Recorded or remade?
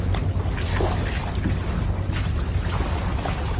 recorded